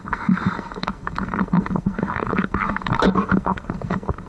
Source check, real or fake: fake